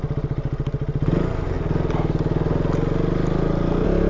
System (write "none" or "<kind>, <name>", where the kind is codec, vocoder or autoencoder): none